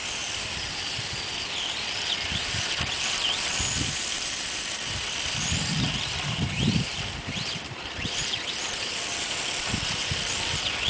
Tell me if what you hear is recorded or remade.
remade